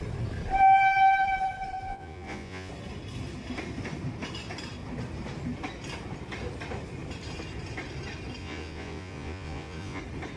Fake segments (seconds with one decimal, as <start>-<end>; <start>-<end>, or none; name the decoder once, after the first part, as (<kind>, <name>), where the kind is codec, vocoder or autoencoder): 1.9-2.7 (vocoder, Vocos); 8.4-10.0